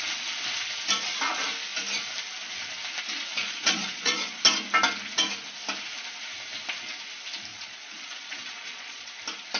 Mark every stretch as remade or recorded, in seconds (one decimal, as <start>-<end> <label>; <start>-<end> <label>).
0.0-3.4 recorded; 3.4-4.4 remade; 4.4-7.5 recorded; 7.5-9.1 remade; 9.1-9.6 recorded